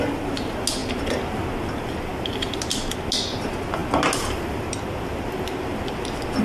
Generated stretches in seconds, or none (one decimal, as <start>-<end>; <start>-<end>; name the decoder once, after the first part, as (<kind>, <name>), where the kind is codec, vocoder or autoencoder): none